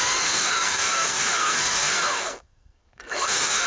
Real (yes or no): no